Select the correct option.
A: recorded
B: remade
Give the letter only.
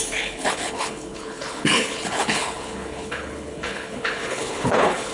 B